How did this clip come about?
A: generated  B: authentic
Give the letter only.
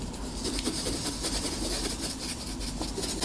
B